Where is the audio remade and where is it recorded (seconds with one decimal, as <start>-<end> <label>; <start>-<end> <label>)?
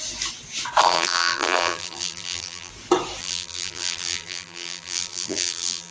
0.0-0.8 recorded; 0.8-2.7 remade; 2.7-3.2 recorded; 3.2-5.9 remade